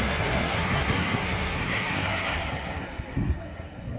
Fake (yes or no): yes